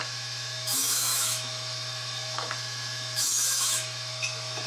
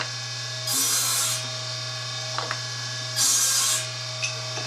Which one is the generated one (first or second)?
first